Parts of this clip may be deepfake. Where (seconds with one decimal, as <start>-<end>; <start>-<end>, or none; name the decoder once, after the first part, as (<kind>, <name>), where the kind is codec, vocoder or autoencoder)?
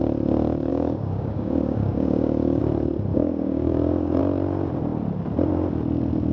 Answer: 0.7-2.6 (codec, DAC); 3.1-4.2